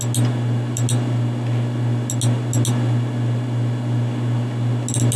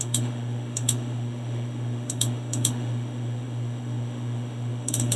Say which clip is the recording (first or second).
first